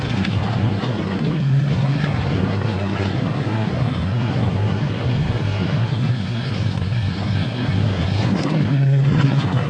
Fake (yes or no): yes